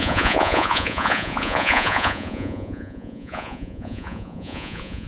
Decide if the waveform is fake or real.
fake